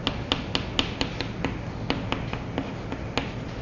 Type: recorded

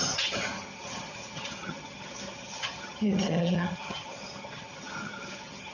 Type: remade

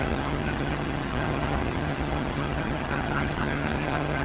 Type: remade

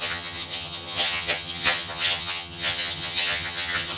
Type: remade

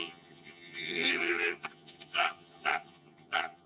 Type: remade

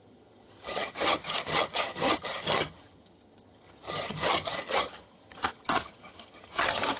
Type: remade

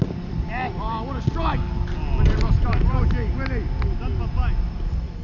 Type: recorded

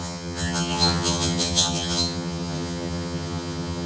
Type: remade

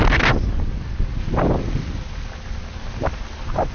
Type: recorded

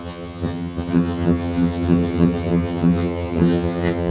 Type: remade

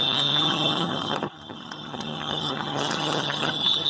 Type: remade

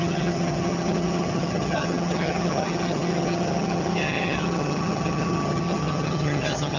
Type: remade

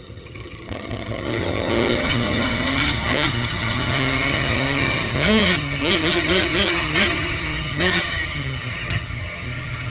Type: remade